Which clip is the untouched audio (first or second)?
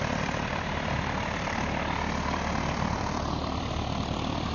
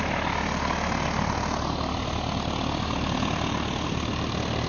second